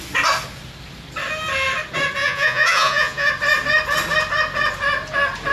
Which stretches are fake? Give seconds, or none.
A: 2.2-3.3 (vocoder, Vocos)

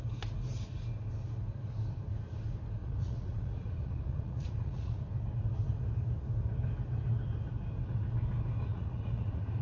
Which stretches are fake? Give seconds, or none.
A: 2.8-5.0 (vocoder, Vocos); 8.7-9.6

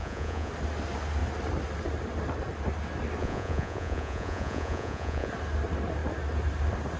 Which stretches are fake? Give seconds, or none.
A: 0.0-0.5 (vocoder, Vocos); 3.2-5.3

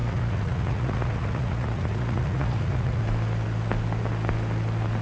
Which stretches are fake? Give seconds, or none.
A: 0.0-3.0 (vocoder, Vocos)

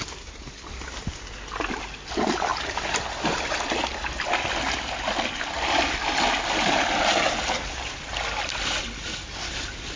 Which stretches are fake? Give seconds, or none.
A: none